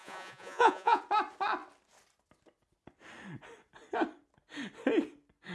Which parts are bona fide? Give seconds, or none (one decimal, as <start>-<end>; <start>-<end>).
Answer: 1.0-5.5